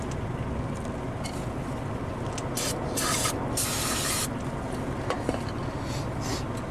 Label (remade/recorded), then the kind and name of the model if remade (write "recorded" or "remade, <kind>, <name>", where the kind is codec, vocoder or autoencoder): recorded